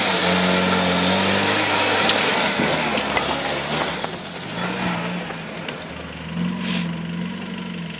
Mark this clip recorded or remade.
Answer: recorded